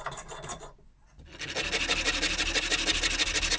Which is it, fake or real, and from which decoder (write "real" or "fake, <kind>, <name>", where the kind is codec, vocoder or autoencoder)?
real